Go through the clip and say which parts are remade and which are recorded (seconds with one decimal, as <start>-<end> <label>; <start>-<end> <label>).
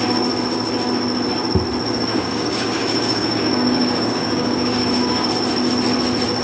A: 0.0-2.1 recorded; 2.1-5.3 remade; 5.3-6.4 recorded